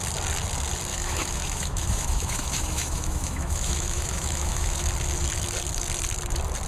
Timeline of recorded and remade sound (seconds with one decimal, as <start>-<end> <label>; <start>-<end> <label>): 0.0-0.9 recorded; 0.9-4.9 remade; 4.9-6.7 recorded

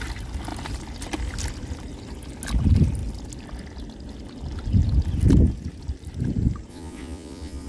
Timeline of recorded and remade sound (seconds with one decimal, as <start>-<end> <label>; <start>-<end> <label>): 0.0-6.7 recorded; 6.7-7.7 remade

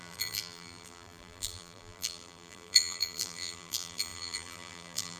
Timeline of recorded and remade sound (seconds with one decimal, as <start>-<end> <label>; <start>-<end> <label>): 0.0-5.2 remade

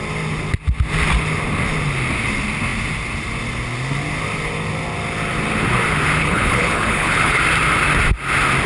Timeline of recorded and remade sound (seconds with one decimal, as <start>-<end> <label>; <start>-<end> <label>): 0.0-6.2 recorded; 6.2-7.4 remade; 7.4-8.7 recorded